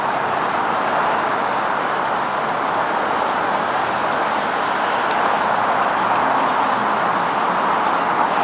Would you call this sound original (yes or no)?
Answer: yes